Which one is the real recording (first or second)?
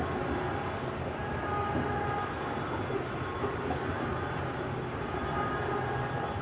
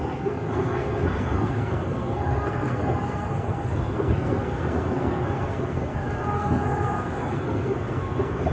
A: first